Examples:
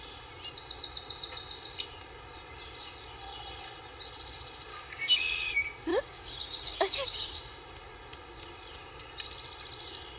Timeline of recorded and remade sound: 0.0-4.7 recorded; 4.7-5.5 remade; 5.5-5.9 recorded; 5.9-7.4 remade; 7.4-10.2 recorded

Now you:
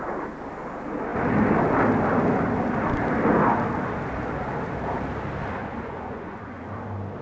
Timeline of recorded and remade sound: 0.0-5.6 recorded; 5.6-6.6 remade; 6.6-7.2 recorded

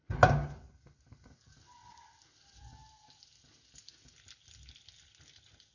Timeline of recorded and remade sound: 0.0-5.7 recorded

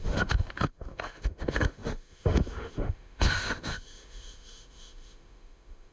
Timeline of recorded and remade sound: 0.0-5.9 remade

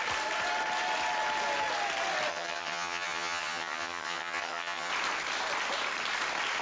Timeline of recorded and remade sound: 0.0-2.3 recorded; 2.3-4.9 remade; 4.9-6.6 recorded